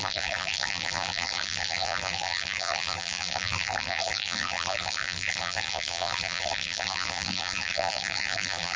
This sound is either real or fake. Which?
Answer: fake